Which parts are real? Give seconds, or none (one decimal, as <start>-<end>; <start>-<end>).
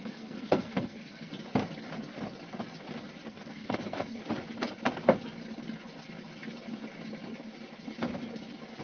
1.3-3.3; 4.2-8.8